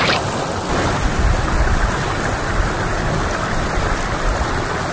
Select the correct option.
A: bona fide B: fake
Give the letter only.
A